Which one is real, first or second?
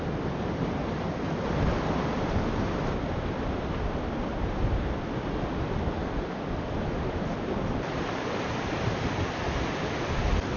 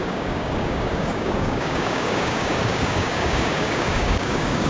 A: first